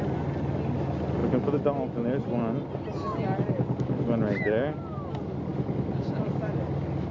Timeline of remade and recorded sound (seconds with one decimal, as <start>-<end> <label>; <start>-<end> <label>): 0.0-7.1 recorded